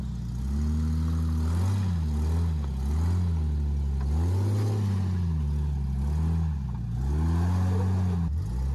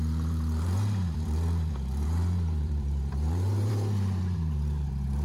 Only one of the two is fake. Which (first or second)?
second